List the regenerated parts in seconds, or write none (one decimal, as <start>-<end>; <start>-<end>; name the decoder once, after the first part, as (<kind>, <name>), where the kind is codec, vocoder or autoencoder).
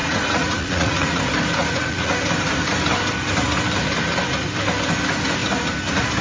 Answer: 0.0-1.2 (vocoder, Vocos); 1.6-2.1